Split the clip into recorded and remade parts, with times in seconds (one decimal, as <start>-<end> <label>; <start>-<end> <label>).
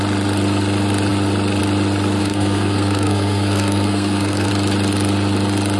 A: 0.0-2.2 recorded; 2.2-4.5 remade; 4.5-5.8 recorded